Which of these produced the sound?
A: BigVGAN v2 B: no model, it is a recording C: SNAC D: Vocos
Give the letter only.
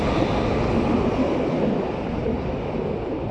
B